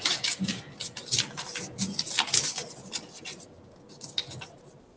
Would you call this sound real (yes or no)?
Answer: yes